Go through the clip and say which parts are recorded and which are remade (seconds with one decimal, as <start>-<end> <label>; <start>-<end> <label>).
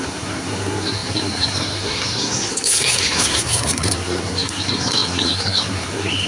0.0-6.3 remade